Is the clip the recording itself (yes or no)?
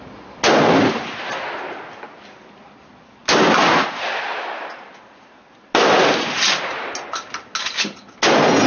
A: yes